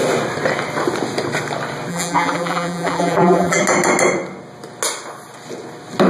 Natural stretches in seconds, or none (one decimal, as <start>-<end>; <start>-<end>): 0.0-1.9; 3.6-6.1